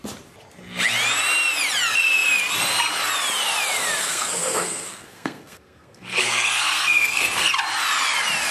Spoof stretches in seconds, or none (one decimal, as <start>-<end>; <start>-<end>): 4.0-7.5